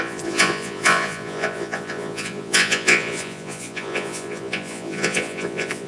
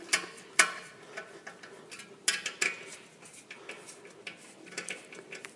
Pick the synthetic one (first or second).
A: first